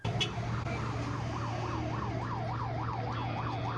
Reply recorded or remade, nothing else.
recorded